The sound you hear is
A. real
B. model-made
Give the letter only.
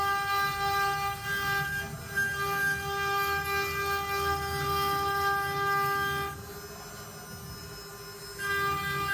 A